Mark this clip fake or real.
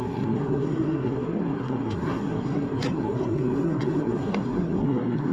fake